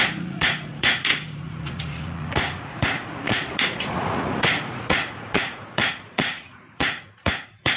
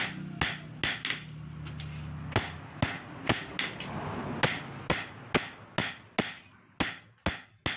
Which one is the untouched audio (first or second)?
second